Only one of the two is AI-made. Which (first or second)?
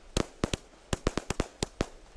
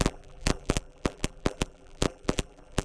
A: second